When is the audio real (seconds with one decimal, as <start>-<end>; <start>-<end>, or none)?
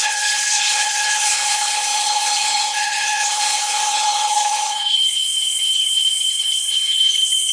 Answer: none